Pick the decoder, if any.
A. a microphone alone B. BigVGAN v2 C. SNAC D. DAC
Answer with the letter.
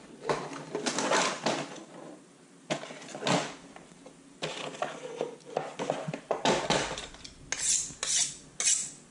A